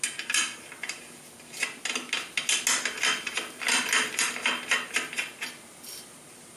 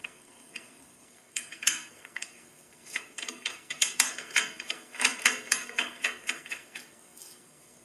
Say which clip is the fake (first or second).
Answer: second